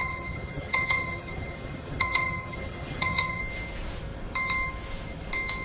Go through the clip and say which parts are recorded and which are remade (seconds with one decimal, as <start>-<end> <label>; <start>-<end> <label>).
0.0-3.4 remade; 3.4-5.6 recorded